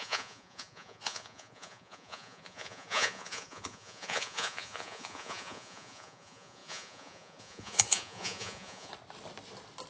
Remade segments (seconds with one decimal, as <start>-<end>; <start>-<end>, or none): 0.0-8.9